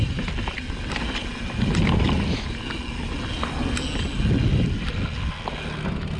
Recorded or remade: recorded